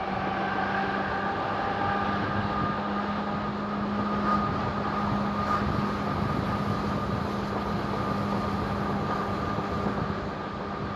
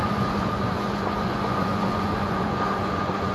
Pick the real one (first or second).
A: first